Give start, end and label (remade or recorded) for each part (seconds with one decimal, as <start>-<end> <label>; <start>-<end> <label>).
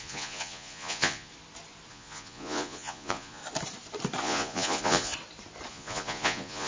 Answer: 0.0-1.3 remade; 1.3-1.9 recorded; 1.9-3.4 remade; 3.4-4.2 recorded; 4.2-5.1 remade; 5.1-5.7 recorded; 5.7-6.7 remade